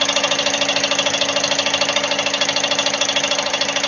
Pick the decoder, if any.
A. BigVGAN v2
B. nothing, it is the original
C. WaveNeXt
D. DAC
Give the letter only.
B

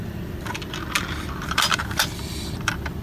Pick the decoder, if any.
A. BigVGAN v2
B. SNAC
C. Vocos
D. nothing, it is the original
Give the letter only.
A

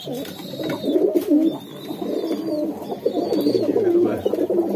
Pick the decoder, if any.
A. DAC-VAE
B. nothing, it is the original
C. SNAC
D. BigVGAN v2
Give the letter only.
B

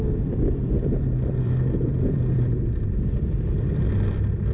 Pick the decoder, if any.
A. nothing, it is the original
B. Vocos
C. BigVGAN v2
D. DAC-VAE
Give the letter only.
C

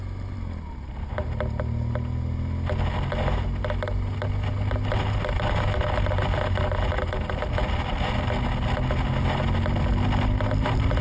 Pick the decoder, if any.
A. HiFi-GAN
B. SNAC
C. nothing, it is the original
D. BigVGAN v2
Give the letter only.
C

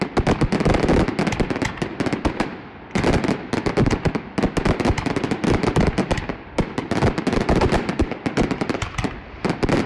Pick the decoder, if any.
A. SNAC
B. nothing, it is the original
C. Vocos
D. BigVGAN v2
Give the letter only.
B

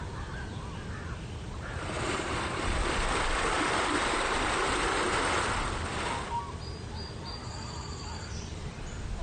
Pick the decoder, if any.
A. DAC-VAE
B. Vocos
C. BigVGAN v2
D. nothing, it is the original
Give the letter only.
D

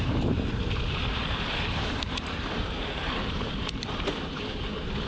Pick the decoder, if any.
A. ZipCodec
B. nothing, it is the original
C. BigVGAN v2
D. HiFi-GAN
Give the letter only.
C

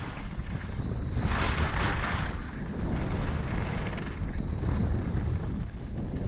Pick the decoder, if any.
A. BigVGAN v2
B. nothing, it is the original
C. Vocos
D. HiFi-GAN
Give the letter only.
B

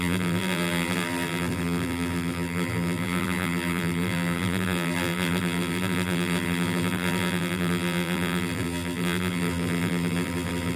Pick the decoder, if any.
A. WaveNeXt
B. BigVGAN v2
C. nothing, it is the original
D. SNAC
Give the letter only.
B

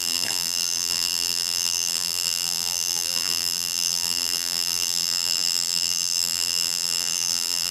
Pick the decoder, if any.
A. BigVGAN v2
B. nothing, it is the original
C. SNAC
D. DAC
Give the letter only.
A